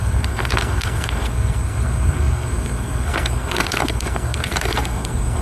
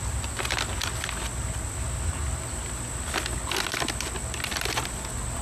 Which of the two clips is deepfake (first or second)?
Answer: first